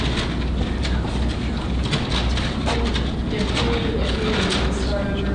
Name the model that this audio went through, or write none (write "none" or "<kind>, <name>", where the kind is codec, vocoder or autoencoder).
none